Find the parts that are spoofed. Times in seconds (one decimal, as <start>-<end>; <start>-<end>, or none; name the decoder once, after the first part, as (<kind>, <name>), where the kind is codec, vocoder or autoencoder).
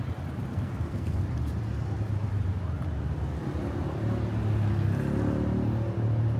0.5-1.2 (codec, SNAC)